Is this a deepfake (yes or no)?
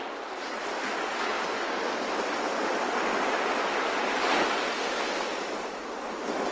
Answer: no